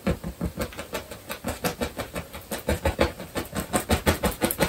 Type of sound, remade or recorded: recorded